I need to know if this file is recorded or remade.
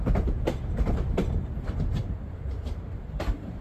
remade